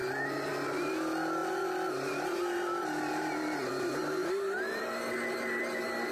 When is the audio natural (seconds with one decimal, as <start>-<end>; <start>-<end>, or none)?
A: 0.5-1.4; 3.7-4.2; 4.8-6.1